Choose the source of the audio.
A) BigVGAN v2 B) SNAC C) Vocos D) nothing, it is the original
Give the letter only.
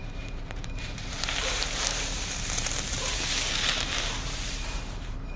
A